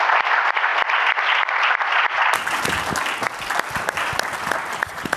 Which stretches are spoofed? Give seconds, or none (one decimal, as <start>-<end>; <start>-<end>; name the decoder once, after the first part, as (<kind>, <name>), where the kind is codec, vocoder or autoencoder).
none